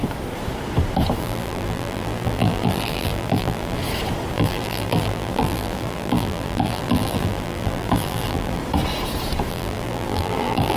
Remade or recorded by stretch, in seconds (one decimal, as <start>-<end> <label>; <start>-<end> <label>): 0.0-1.2 recorded; 1.2-3.8 remade; 3.8-4.3 recorded; 4.3-8.6 remade; 8.6-9.5 recorded; 9.5-10.8 remade

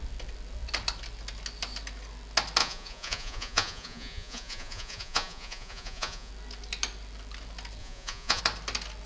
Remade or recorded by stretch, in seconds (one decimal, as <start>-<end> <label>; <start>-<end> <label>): 0.0-2.6 recorded; 2.6-6.3 remade; 6.3-7.8 recorded; 7.8-8.4 remade; 8.4-9.1 recorded

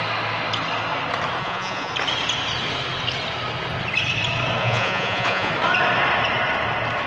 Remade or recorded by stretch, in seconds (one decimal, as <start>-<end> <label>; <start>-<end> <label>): 0.0-1.4 recorded; 1.4-1.9 remade; 1.9-4.6 recorded; 4.6-5.5 remade; 5.5-7.1 recorded

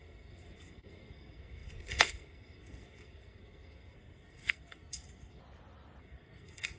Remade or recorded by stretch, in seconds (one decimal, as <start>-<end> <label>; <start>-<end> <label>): 0.0-5.4 remade; 5.4-6.0 recorded; 6.0-6.8 remade